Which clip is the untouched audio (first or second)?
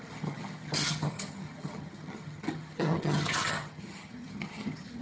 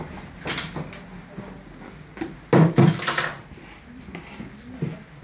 second